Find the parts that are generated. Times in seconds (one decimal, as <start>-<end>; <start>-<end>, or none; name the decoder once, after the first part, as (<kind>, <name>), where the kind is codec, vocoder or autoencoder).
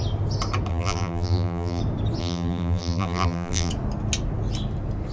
0.7-1.8 (vocoder, BigVGAN v2); 2.2-3.7